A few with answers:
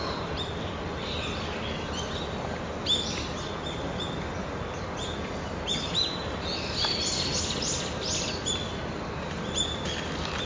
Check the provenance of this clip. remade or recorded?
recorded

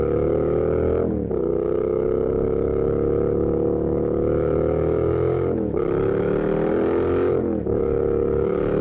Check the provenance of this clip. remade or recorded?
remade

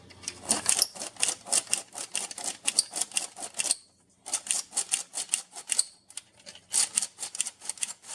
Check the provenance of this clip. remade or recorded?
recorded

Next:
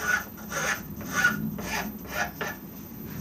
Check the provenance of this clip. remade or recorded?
remade